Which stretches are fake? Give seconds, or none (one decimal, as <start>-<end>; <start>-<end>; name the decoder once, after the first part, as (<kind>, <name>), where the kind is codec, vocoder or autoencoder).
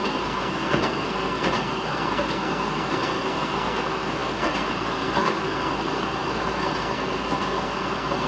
0.0-8.3 (codec, SNAC)